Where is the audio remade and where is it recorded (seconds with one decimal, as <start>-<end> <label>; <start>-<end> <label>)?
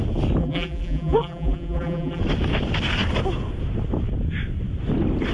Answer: 0.0-0.4 recorded; 0.4-2.2 remade; 2.2-5.3 recorded